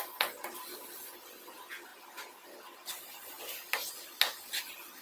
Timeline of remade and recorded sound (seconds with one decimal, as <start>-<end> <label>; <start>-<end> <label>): 0.0-5.0 recorded

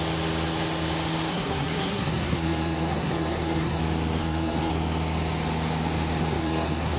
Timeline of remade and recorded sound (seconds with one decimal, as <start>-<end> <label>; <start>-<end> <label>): 0.0-1.3 recorded; 1.3-3.8 remade; 3.8-4.2 recorded; 4.2-4.7 remade; 4.7-6.2 recorded; 6.2-7.0 remade

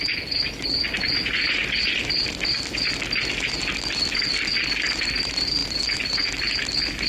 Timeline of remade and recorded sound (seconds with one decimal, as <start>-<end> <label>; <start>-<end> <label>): 0.0-7.1 recorded

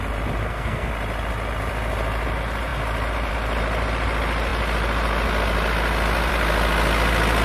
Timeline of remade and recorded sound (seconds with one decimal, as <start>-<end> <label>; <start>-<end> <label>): 0.0-0.4 recorded; 0.4-0.9 remade; 0.9-7.4 recorded

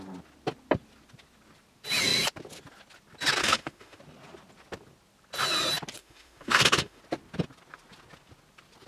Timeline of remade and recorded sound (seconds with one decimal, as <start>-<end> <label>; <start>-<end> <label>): 0.0-3.4 recorded; 3.4-4.0 remade; 4.0-6.0 recorded; 6.0-7.0 remade; 7.0-8.9 recorded

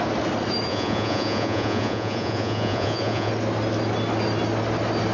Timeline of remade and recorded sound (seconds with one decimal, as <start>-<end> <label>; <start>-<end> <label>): 0.0-0.7 recorded; 0.7-3.3 remade; 3.3-5.1 recorded

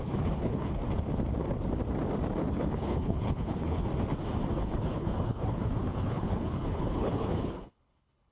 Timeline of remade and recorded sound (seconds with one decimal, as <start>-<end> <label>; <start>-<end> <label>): 0.0-0.8 remade; 0.8-2.5 recorded; 2.5-3.9 remade; 3.9-4.6 recorded; 4.6-8.3 remade